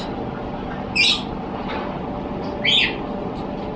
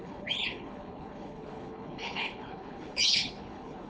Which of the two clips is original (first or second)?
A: first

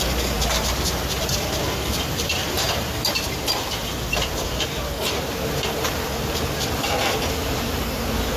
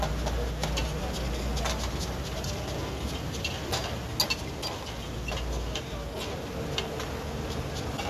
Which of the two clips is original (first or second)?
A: second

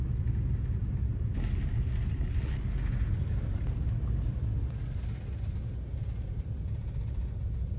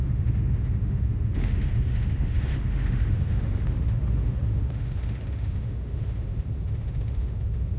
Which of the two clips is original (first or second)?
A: first